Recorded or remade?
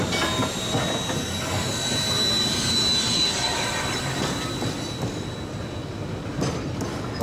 recorded